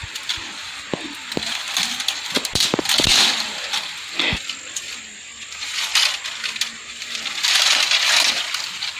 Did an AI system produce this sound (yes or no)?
no